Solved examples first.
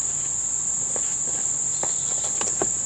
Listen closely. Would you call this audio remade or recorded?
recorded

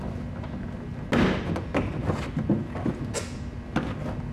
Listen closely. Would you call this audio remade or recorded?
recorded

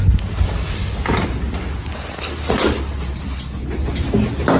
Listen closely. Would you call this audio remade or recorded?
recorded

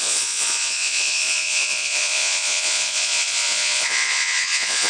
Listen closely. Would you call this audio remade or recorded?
remade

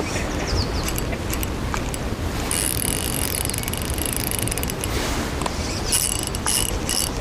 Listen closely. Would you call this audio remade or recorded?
recorded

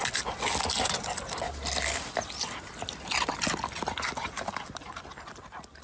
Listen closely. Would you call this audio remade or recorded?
recorded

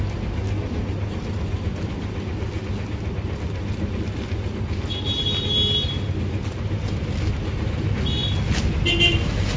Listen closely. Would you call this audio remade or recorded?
recorded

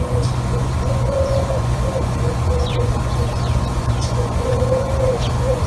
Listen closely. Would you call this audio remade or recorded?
remade